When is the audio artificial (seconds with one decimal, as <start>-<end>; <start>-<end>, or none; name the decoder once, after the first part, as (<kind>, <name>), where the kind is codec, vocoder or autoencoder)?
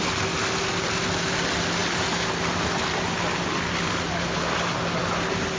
none